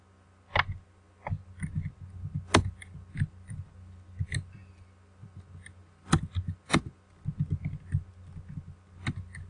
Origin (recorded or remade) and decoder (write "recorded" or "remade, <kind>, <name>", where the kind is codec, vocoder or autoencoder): recorded